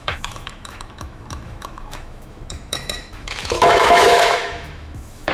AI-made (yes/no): yes